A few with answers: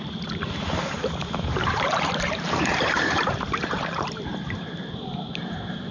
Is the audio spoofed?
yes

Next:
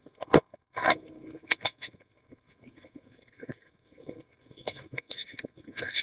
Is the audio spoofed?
yes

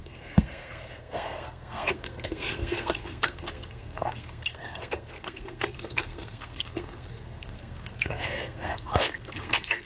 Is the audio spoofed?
yes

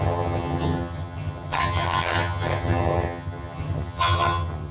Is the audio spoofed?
yes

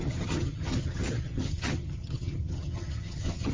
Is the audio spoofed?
yes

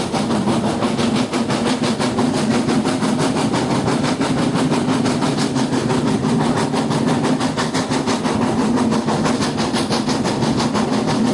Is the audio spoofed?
no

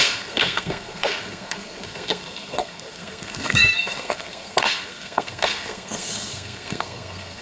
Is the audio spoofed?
yes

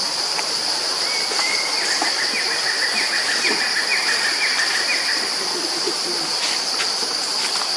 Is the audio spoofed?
no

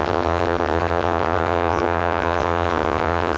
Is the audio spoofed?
yes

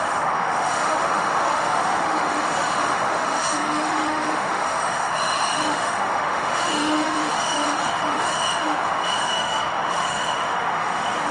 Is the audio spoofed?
yes